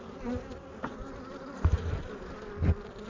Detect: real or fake real